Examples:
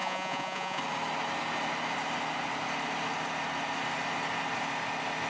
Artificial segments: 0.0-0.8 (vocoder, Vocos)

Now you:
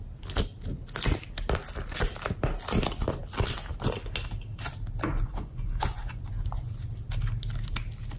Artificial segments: 5.1-6.7 (vocoder, Vocos)

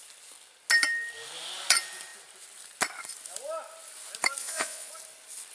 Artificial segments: 4.4-4.9 (vocoder, Vocos)

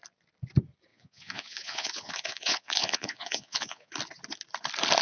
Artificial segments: 0.9-3.9 (vocoder, Vocos)